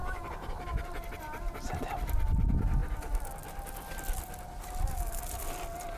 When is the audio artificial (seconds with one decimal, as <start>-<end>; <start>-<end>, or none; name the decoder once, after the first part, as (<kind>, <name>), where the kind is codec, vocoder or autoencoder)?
none